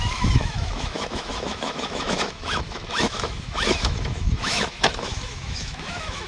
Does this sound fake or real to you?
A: fake